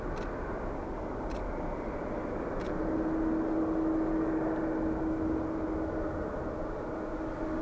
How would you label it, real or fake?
real